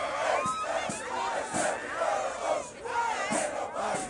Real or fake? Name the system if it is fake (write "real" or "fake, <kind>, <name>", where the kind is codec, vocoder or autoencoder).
real